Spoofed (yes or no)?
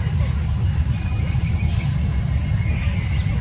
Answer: no